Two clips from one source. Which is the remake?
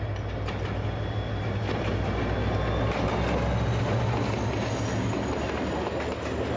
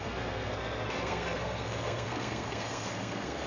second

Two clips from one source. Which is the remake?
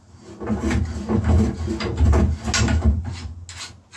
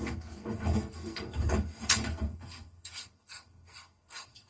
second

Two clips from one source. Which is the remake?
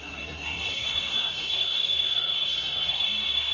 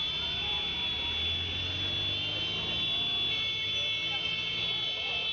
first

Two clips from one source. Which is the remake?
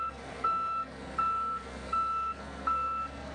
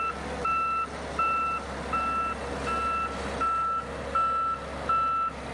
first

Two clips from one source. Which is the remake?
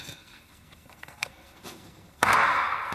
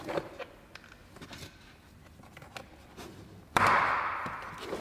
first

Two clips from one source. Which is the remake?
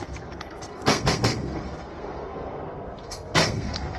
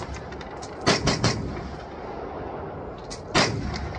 first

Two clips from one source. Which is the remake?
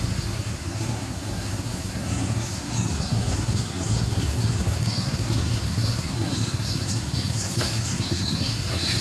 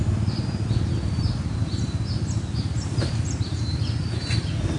first